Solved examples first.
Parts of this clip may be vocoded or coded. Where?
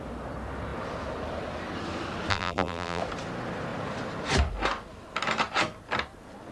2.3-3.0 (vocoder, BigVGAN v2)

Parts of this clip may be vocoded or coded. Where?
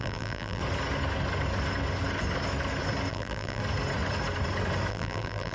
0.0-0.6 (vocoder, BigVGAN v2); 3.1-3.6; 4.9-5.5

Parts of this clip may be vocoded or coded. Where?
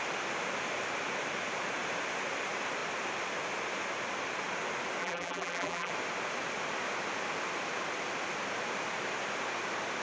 5.0-5.9 (vocoder, BigVGAN v2)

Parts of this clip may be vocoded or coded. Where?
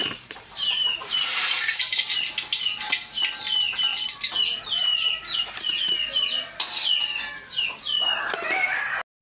0.0-1.8 (vocoder, BigVGAN v2)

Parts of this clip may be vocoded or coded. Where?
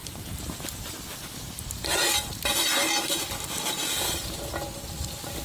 0.0-3.2 (vocoder, BigVGAN v2); 3.8-4.5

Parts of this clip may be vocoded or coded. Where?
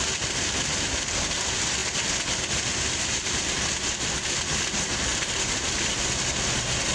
0.0-1.8 (vocoder, BigVGAN v2); 3.0-5.1; 5.8-6.9